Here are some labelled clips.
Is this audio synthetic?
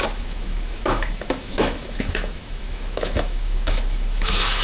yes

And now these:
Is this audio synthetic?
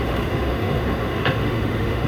yes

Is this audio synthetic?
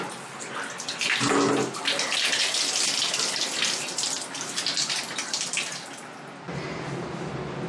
no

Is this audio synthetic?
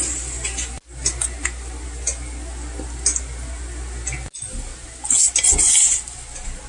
no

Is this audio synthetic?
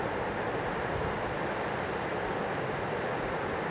no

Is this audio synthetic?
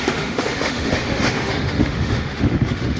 yes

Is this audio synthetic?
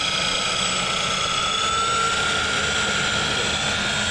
no